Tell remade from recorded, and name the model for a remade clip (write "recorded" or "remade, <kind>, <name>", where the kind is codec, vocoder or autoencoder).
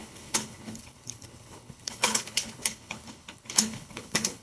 remade, codec, HILCodec